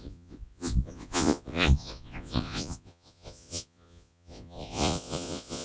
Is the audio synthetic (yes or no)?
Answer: yes